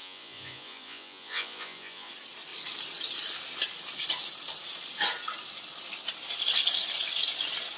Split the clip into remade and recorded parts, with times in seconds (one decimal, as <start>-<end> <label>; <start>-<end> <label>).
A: 0.0-2.1 remade; 2.1-7.8 recorded